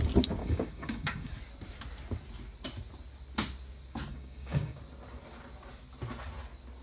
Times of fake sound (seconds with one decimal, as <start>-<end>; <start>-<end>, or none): 0.4-1.3; 4.1-4.8